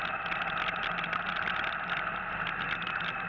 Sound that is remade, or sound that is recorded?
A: recorded